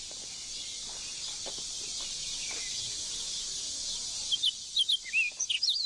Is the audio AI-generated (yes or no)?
no